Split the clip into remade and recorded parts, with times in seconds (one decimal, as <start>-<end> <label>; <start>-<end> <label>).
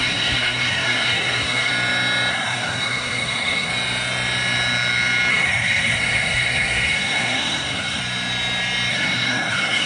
0.0-1.7 remade; 1.7-2.3 recorded; 2.3-3.7 remade; 3.7-5.3 recorded; 5.3-8.0 remade; 8.0-8.9 recorded; 8.9-9.9 remade